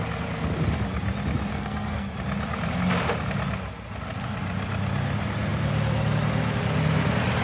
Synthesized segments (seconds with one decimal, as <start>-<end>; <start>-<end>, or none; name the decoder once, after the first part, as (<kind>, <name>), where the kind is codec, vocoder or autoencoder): 1.5-2.1 (codec, SNAC)